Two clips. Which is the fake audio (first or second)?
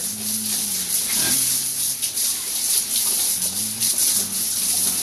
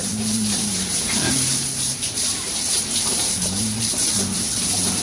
second